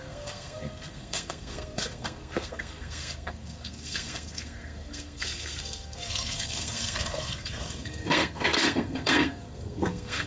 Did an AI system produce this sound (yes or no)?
yes